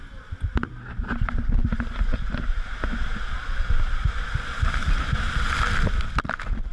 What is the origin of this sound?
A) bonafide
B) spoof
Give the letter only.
A